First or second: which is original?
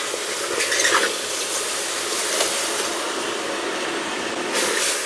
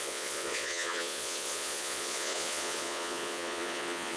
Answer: first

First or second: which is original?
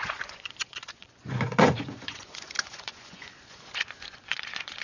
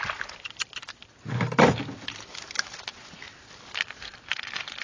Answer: second